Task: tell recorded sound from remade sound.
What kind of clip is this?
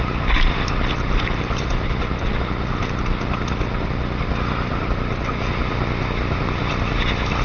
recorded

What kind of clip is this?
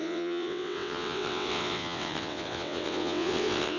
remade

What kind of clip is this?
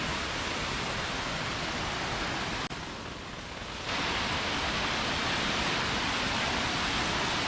recorded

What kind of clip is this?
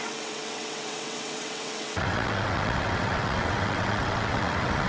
remade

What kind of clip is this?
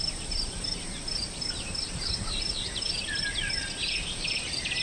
recorded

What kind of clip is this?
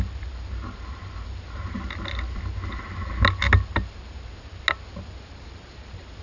recorded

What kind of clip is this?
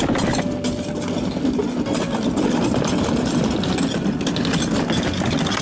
recorded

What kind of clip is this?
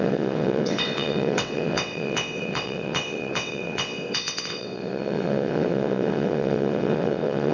remade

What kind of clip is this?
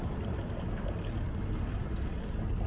recorded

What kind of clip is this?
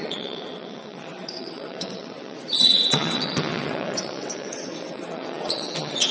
remade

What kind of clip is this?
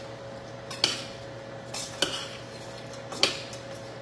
recorded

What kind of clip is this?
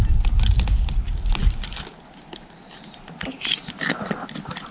recorded